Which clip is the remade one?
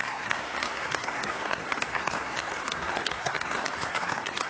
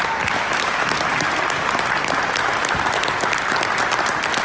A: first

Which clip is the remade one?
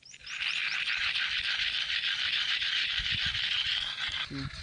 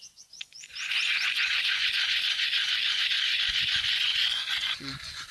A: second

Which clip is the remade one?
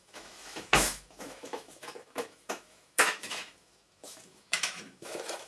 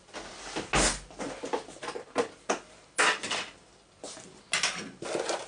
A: first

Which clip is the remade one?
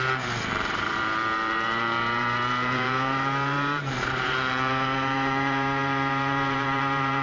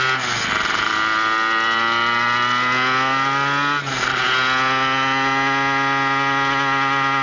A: first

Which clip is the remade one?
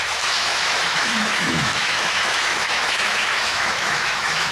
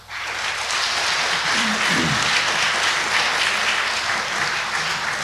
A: first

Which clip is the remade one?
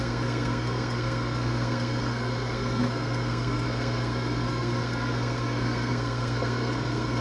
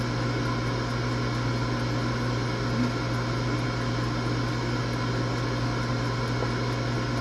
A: first